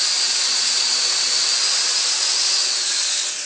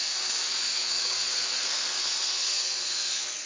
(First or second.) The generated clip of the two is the second